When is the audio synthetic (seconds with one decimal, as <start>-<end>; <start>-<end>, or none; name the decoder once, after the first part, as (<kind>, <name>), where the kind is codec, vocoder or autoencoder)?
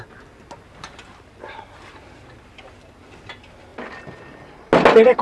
none